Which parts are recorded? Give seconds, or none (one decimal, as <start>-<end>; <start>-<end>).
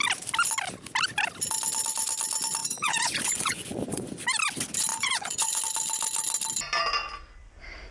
0.0-2.6; 4.2-4.9; 5.6-7.9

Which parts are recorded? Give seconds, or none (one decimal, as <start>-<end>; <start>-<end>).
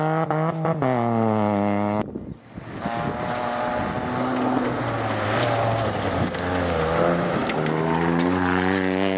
0.0-9.2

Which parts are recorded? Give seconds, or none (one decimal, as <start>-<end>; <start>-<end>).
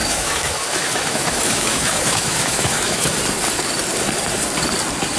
3.1-5.2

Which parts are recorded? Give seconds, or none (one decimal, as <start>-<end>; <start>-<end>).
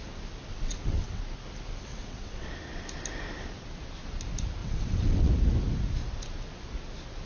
0.0-0.5; 1.2-1.9; 2.5-4.6; 5.3-7.3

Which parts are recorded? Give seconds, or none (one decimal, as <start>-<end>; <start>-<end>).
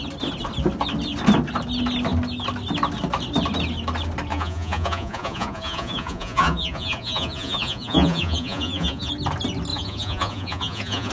0.0-4.3; 9.1-9.7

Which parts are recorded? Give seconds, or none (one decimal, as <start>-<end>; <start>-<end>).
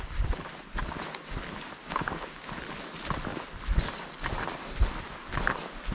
0.0-1.8; 2.5-5.9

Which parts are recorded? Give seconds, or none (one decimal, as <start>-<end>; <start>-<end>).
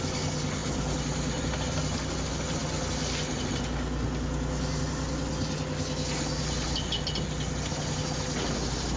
0.0-0.6; 1.8-9.0